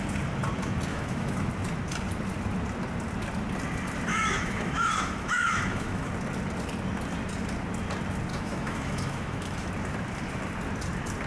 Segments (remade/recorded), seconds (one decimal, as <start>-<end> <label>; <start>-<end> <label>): 0.0-0.9 recorded; 0.9-1.5 remade; 1.5-4.1 recorded; 4.1-6.1 remade; 6.1-8.3 recorded; 8.3-9.7 remade; 9.7-11.3 recorded